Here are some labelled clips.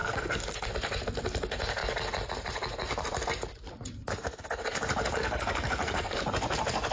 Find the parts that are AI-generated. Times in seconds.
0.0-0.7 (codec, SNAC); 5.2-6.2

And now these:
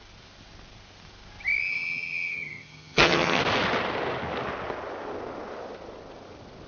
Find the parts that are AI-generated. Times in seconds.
1.7-3.4 (vocoder, HiFi-GAN)

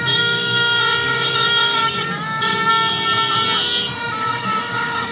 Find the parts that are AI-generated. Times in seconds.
0.0-2.7 (codec, DAC); 4.2-5.1

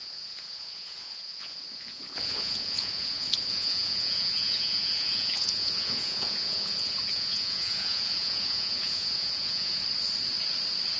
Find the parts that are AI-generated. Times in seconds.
0.0-9.8 (vocoder, Vocos)

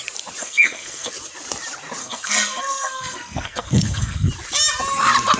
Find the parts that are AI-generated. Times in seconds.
0.4-1.1 (codec, SNAC); 2.0-4.3

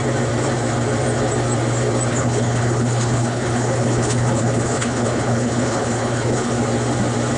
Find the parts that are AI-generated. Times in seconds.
2.1-6.5 (codec, HILCodec)